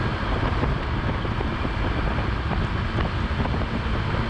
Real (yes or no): no